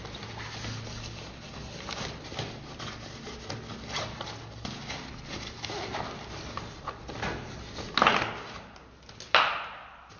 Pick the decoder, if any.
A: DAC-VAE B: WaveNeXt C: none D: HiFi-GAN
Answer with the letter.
C